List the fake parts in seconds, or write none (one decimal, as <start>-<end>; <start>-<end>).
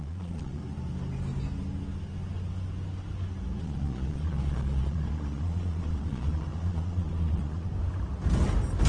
0.0-0.6; 3.6-7.7